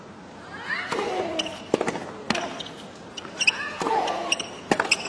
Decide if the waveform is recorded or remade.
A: recorded